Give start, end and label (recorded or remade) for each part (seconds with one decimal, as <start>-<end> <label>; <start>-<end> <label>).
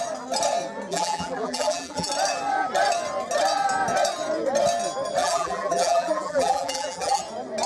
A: 0.0-0.9 recorded; 0.9-2.1 remade; 2.1-5.2 recorded; 5.2-7.2 remade; 7.2-7.7 recorded